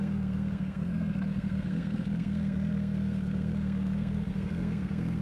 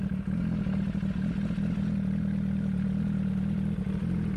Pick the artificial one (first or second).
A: first